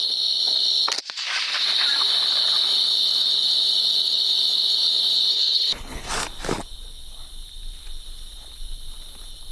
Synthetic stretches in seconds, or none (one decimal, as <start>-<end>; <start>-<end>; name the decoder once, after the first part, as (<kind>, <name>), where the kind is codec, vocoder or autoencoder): 5.3-6.1 (codec, HILCodec)